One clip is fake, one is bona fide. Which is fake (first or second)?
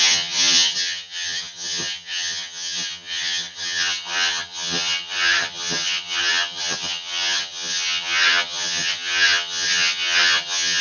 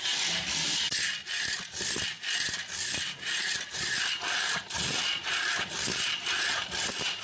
first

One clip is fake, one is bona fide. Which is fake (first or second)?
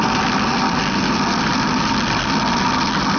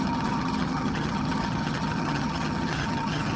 second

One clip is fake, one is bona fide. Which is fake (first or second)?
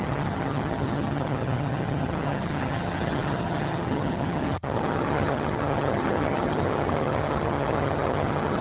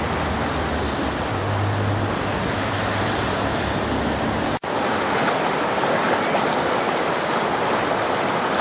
first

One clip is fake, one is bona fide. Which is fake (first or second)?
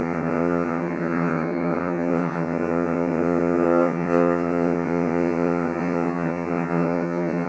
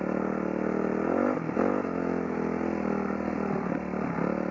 first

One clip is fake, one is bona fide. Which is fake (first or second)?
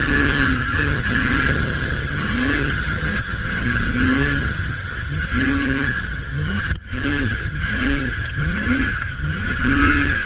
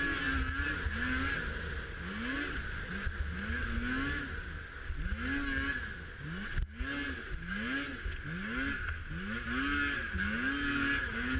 first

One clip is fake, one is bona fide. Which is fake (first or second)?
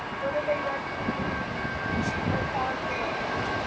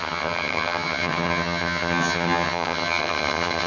second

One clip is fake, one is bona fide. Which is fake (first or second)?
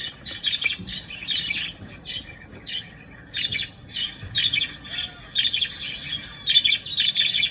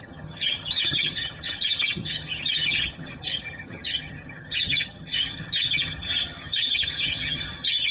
second